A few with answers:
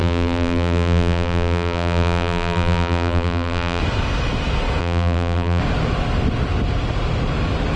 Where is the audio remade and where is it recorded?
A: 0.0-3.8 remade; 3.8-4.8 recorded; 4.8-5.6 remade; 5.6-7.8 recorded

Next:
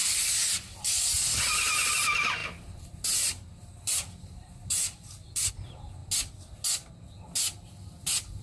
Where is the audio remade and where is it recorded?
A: 0.0-2.4 recorded; 2.4-5.5 remade; 5.5-8.4 recorded